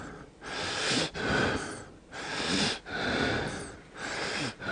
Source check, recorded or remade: recorded